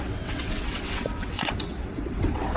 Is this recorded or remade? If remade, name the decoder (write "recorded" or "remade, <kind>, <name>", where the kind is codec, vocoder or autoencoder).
remade, vocoder, WaveNeXt